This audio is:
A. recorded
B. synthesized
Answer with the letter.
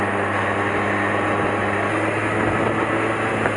A